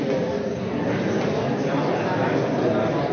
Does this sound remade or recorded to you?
recorded